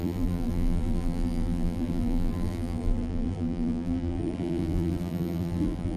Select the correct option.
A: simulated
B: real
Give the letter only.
A